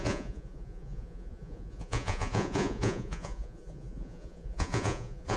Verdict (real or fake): fake